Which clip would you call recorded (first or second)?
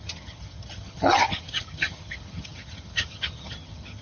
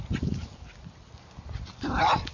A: second